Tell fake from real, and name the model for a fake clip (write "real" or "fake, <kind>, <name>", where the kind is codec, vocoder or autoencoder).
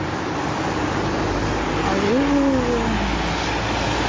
real